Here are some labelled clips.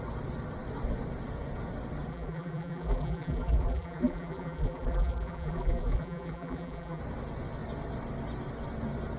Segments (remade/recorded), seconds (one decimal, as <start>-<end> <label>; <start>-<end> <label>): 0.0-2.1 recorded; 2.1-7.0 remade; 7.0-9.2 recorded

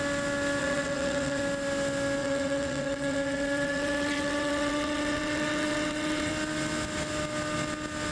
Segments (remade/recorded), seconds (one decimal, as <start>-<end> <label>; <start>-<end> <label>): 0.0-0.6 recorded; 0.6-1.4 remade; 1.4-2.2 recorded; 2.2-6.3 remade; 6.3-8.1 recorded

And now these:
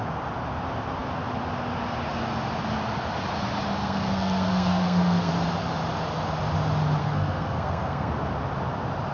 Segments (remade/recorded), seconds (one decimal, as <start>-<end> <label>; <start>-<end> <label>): 0.0-3.8 recorded; 3.8-5.3 remade; 5.3-7.0 recorded; 7.0-8.1 remade; 8.1-9.1 recorded

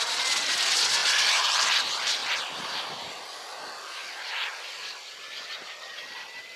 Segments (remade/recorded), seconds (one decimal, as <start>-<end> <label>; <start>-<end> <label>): 0.0-1.0 recorded; 1.0-1.8 remade; 1.8-6.6 recorded